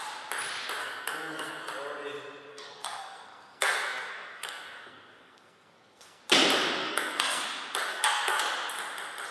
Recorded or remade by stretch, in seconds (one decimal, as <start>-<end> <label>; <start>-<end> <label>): 0.0-0.8 recorded; 0.8-1.7 remade; 1.7-2.5 recorded; 2.5-6.2 remade; 6.2-6.8 recorded; 6.8-7.4 remade; 7.4-7.9 recorded; 7.9-8.4 remade; 8.4-9.3 recorded